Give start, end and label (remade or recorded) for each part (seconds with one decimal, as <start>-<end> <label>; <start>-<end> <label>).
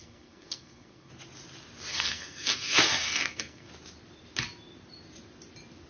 0.0-1.1 remade; 1.1-1.9 recorded; 1.9-3.7 remade; 3.7-5.9 recorded